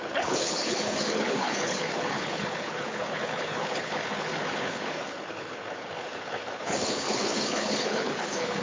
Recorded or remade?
remade